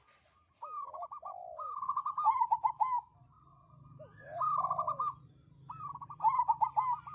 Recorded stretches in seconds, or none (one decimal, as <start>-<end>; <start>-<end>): 0.0-7.1